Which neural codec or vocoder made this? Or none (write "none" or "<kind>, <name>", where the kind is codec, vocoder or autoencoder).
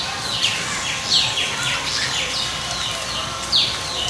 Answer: none